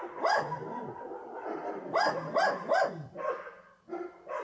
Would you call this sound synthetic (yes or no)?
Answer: no